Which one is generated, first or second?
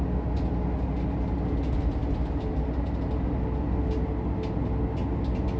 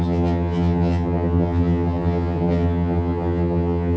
second